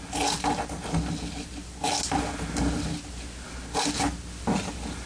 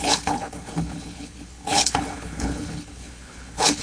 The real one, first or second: first